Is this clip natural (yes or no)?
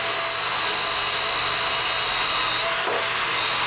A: yes